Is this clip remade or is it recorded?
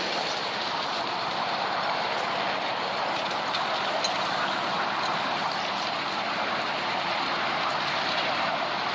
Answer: recorded